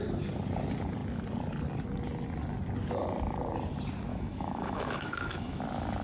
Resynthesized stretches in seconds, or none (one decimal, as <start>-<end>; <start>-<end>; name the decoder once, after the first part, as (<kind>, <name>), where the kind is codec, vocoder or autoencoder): 4.1-5.6 (autoencoder, DAC-VAE)